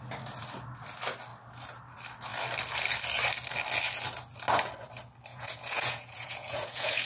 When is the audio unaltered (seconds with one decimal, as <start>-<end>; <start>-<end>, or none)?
0.0-5.3